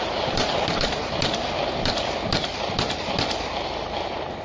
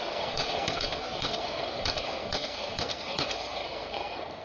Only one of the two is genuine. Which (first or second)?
first